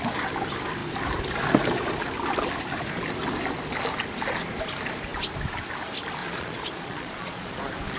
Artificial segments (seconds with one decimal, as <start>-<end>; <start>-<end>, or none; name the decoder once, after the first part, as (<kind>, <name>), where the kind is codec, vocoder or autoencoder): 6.2-7.6 (vocoder, Vocos)

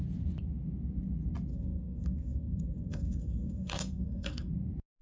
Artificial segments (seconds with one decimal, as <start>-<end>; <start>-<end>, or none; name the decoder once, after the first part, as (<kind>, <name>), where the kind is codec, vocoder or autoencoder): 1.5-4.5 (codec, SNAC)

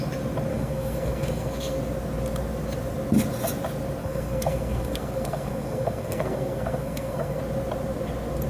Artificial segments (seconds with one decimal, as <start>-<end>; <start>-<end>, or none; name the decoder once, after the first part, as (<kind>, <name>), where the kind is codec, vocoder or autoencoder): 0.5-1.8 (codec, SNAC); 4.0-7.4

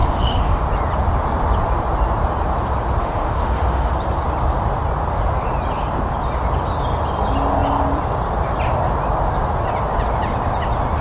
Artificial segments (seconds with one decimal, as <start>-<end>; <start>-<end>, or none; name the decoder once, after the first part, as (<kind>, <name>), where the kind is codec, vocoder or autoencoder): 0.0-0.7 (autoencoder, DAC-VAE); 3.0-3.9

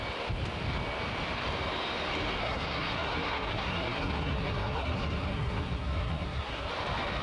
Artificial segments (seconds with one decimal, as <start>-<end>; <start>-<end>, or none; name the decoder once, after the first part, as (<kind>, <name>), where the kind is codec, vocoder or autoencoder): 2.4-6.7 (codec, SNAC)

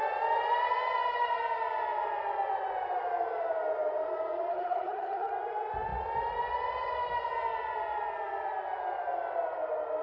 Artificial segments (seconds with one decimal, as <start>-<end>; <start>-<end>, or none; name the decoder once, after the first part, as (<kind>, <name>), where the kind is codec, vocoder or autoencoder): 4.5-5.3 (codec, HILCodec)